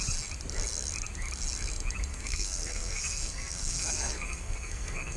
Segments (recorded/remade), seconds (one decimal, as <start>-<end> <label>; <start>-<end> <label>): 0.0-2.1 recorded; 2.1-5.2 remade